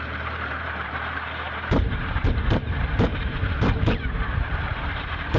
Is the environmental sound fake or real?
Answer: fake